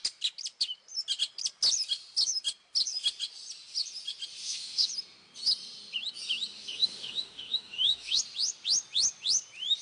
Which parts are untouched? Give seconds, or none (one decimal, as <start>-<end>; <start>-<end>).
0.0-4.4; 4.9-6.5; 8.2-9.8